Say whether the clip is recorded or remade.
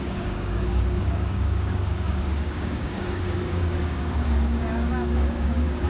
remade